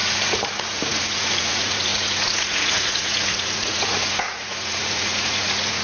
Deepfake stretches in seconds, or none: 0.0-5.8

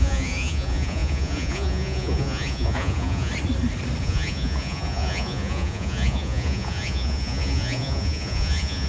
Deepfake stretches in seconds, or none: 0.0-3.3; 4.0-8.9

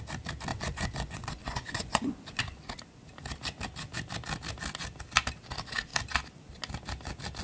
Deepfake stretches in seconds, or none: 0.5-2.4

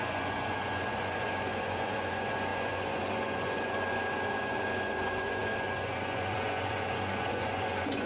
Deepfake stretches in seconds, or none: 0.0-8.1

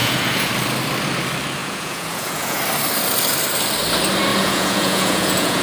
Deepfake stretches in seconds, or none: 0.0-0.5; 1.6-2.6; 4.3-5.6

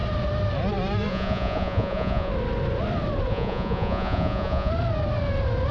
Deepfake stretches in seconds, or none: 1.1-2.3; 3.3-4.7

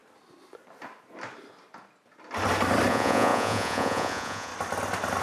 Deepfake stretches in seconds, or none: 2.9-4.5

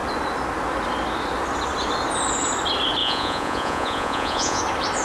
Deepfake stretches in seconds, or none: 3.0-4.6